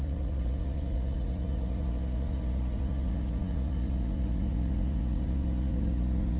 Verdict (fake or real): fake